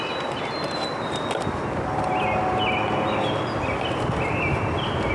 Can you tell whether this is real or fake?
real